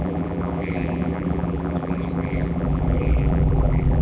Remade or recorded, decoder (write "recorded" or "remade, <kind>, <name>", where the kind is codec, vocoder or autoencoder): remade, vocoder, BigVGAN v2